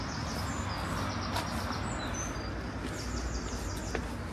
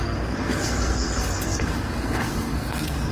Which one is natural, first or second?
first